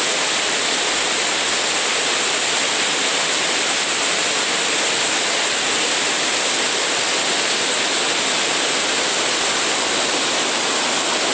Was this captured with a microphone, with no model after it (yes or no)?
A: yes